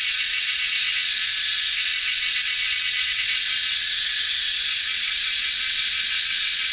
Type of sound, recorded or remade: remade